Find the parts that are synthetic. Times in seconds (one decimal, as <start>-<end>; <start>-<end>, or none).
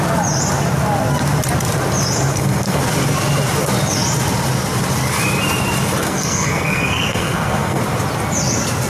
2.3-2.8; 6.0-7.8